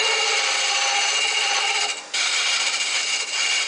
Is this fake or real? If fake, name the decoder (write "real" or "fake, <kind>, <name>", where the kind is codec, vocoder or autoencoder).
real